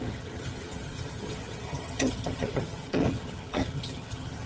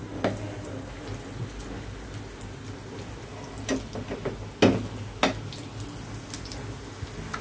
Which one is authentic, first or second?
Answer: second